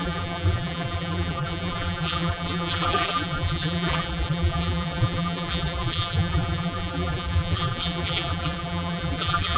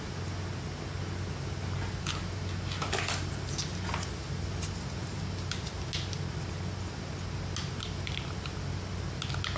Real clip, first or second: second